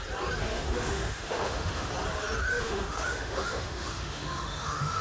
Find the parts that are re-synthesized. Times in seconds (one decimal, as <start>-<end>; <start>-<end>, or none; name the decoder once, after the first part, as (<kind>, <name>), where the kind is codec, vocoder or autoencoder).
0.4-1.9 (autoencoder, DAC-VAE); 2.5-5.0

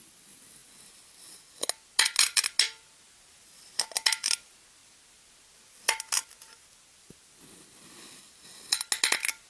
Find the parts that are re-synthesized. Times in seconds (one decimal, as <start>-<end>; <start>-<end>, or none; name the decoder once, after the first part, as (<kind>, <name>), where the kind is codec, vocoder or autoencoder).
none

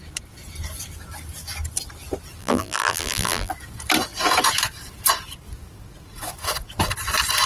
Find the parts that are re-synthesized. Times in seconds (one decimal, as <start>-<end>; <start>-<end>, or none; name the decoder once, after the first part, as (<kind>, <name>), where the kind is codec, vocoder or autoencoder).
2.4-3.5 (vocoder, BigVGAN v2)

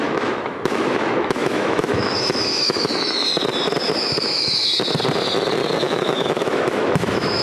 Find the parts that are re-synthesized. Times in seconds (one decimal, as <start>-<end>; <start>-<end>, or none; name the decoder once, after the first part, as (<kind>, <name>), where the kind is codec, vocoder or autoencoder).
0.0-3.3 (autoencoder, DAC-VAE); 4.0-4.7; 5.8-7.4

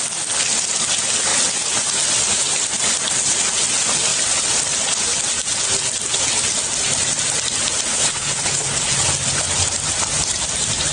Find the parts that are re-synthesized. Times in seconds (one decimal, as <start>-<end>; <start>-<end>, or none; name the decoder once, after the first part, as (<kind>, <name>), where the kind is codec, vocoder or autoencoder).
7.9-8.9 (codec, HILCodec)

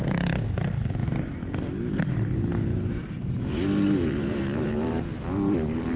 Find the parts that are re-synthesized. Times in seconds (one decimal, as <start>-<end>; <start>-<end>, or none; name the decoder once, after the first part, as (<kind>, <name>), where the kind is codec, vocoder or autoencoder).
0.0-1.0 (vocoder, BigVGAN v2); 2.0-6.0

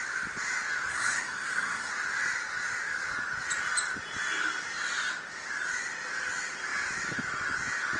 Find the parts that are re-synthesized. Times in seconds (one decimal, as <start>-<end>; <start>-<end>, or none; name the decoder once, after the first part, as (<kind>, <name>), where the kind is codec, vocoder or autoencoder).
0.9-1.9 (codec, SNAC)

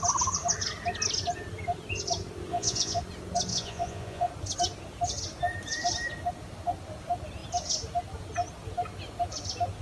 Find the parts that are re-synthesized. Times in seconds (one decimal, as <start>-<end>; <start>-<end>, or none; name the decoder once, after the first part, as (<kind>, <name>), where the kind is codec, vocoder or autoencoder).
2.5-3.0 (vocoder, Vocos); 3.5-4.3